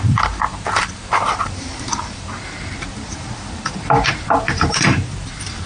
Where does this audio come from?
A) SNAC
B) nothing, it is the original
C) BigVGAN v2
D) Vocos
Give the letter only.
C